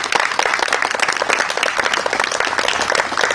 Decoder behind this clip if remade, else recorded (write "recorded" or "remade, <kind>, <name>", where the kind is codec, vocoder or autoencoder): recorded